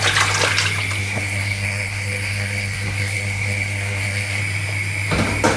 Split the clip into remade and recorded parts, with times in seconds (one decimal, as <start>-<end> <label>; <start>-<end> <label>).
0.0-1.0 recorded; 1.0-4.4 remade; 4.4-5.6 recorded